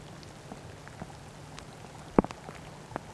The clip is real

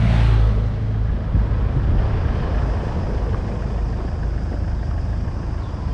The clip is real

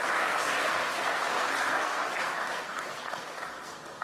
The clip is fake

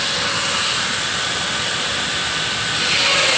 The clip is real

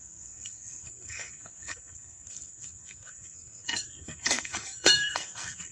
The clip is fake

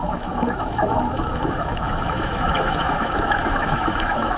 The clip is fake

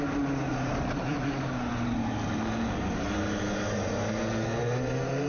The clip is real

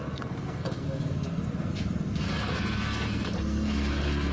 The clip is fake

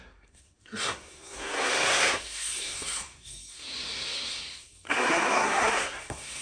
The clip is fake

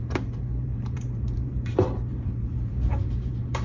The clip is fake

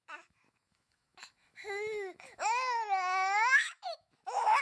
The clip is fake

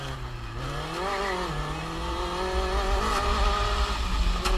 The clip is real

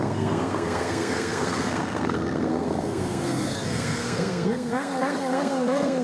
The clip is fake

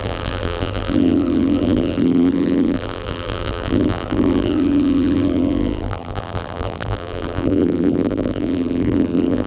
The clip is fake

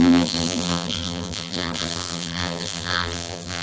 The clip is fake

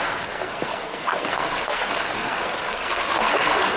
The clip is fake